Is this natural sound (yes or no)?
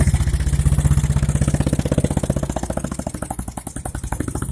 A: yes